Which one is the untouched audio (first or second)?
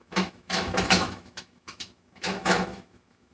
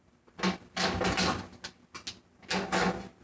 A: second